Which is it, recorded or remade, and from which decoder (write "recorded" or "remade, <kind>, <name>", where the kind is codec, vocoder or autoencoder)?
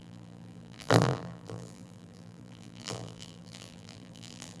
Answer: remade, vocoder, BigVGAN v2